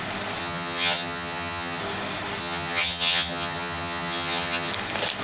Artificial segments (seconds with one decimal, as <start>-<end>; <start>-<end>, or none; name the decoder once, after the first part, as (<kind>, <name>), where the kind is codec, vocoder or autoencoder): 0.4-1.8 (vocoder, HiFi-GAN); 2.4-4.7